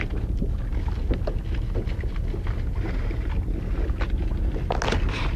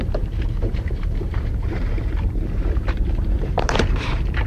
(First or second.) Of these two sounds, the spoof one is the second